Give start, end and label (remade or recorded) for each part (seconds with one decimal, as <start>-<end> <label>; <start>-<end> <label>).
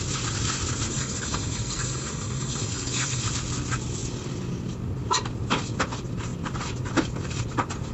0.0-0.9 recorded; 0.9-3.2 remade; 3.2-7.9 recorded